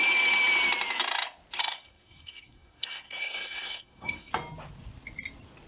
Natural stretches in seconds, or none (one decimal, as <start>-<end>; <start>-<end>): 0.0-1.6; 4.3-5.7